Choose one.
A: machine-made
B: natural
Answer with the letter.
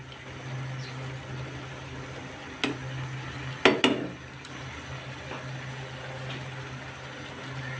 B